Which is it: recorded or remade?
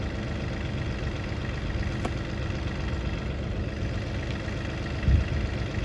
recorded